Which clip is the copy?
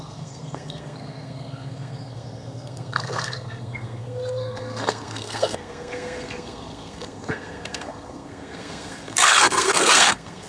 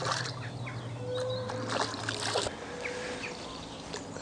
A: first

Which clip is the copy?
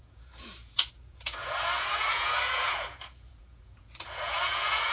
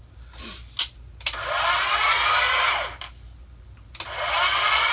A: first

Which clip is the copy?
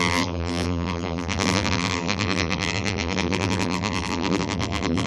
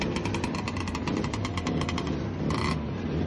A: first